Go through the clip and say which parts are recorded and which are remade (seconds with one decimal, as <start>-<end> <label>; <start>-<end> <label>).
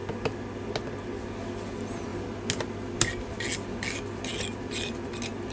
0.0-5.5 recorded